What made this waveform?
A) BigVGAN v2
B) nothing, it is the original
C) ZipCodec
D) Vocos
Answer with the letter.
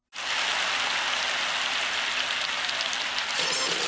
B